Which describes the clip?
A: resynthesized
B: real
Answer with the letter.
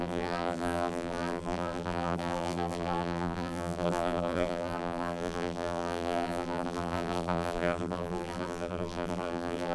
A